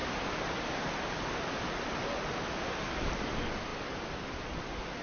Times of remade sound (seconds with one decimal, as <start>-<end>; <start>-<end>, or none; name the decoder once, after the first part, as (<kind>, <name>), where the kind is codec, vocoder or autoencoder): 3.0-3.7 (vocoder, BigVGAN v2)